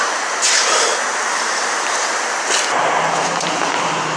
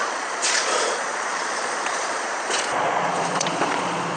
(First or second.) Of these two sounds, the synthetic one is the second